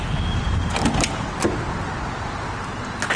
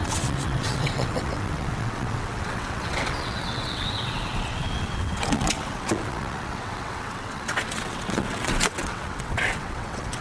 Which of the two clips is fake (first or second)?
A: second